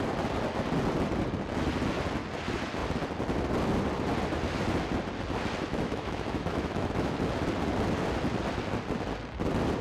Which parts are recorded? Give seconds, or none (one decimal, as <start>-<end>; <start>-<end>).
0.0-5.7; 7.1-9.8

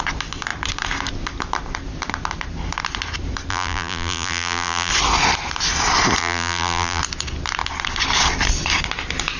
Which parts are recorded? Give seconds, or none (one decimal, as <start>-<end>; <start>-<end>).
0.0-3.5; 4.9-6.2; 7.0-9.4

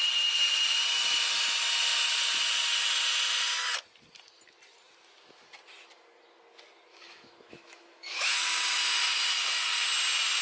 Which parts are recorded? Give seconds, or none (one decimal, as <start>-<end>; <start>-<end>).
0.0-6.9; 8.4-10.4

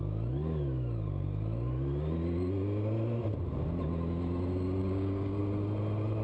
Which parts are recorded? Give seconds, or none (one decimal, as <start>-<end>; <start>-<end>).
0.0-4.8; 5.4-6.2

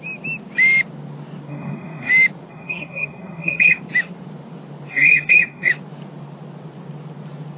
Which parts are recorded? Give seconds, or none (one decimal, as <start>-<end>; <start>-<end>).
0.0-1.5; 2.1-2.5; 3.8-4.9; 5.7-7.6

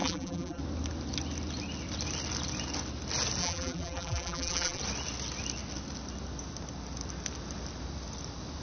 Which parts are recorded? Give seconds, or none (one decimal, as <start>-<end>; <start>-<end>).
0.6-3.4; 4.8-8.6

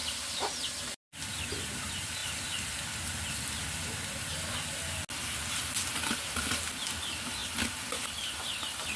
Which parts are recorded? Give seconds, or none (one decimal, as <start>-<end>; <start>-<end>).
0.0-9.0